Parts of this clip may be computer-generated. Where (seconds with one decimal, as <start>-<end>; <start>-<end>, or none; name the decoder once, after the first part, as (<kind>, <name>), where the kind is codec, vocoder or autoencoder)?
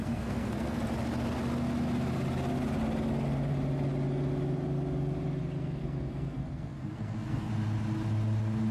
0.0-0.8 (codec, SNAC); 5.6-7.5